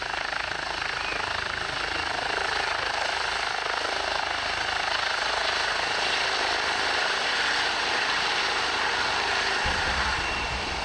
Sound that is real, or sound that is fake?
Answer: fake